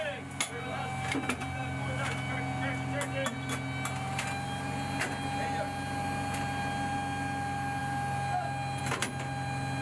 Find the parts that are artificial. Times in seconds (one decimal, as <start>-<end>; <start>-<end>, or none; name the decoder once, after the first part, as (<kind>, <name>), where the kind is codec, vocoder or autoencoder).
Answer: none